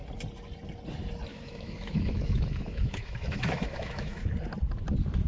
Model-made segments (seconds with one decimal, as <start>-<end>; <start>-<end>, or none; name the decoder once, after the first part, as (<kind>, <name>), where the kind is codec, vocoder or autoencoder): 1.3-4.3 (autoencoder, DAC-VAE)